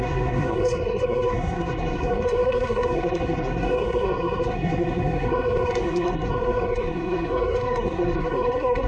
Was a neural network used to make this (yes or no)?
yes